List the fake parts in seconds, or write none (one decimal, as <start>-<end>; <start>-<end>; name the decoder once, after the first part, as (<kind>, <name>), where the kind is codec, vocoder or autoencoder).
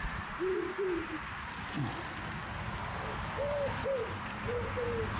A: none